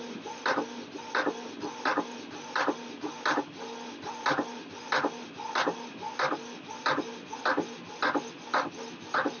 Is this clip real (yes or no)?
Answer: yes